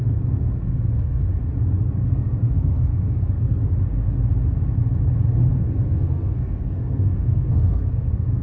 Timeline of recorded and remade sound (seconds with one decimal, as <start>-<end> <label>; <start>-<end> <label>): 0.0-1.2 remade; 1.2-1.9 recorded; 1.9-3.6 remade; 3.6-5.5 recorded; 5.5-8.4 remade